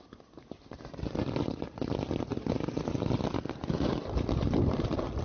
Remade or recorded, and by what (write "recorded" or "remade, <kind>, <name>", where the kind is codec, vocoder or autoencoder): recorded